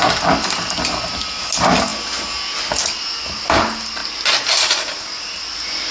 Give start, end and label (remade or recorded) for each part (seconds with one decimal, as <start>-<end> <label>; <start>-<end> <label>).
0.0-5.9 recorded